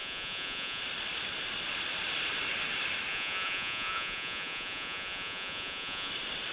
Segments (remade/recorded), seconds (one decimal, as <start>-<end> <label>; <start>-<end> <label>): 0.0-0.8 remade; 0.8-3.1 recorded; 3.1-6.1 remade; 6.1-6.5 recorded